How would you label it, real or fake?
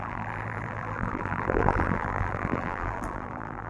fake